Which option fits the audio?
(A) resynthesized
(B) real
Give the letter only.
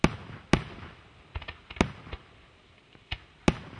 B